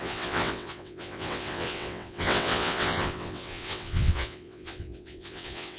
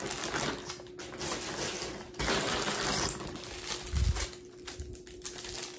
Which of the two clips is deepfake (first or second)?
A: first